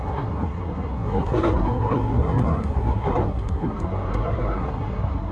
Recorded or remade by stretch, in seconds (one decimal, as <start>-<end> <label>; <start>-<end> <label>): 0.0-5.3 remade